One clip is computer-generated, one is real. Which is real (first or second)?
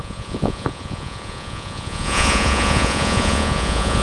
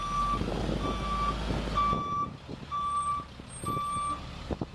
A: second